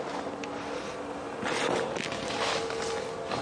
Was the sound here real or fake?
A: real